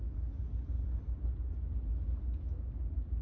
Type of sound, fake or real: real